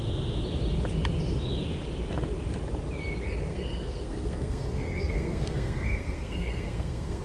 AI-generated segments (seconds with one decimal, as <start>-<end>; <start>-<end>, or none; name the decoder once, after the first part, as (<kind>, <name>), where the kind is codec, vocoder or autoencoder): 3.5-7.2 (codec, SNAC)